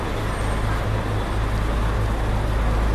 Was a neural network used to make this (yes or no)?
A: no